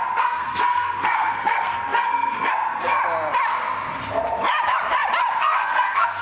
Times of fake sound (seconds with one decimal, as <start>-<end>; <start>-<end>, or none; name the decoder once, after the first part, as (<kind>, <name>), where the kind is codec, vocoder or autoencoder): 0.0-3.0 (codec, SNAC); 5.4-6.2